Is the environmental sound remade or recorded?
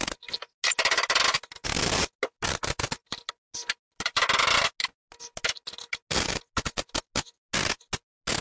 recorded